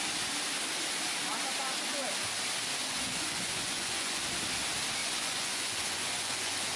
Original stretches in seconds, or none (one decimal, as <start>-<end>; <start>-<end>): 0.0-2.8; 4.2-5.0